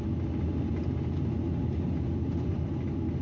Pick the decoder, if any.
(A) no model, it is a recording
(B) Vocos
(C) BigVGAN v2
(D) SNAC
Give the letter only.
A